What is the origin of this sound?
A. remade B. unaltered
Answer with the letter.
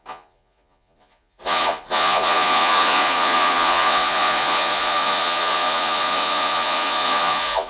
A